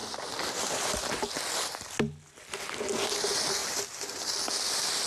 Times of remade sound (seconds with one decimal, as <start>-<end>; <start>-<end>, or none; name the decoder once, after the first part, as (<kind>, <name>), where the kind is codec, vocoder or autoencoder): none